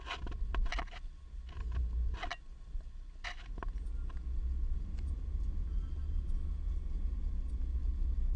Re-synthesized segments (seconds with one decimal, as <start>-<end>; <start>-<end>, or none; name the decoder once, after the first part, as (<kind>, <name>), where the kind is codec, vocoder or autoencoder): none